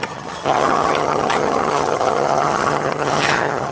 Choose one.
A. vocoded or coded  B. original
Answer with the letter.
A